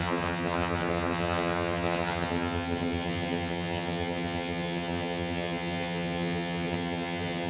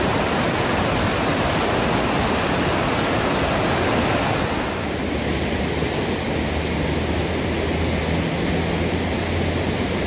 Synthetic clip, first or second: first